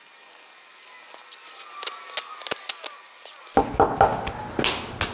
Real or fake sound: real